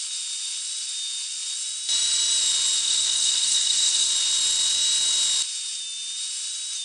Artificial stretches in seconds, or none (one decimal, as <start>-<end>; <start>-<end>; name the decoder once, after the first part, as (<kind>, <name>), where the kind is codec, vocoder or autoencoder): 2.8-4.1 (codec, SNAC)